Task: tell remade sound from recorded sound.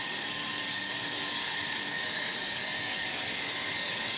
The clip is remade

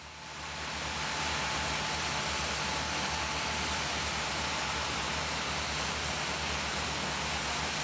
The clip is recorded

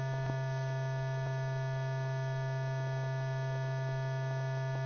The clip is recorded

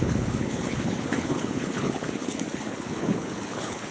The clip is remade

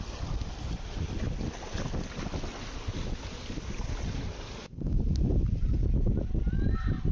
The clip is recorded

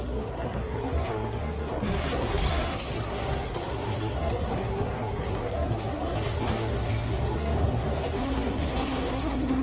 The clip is remade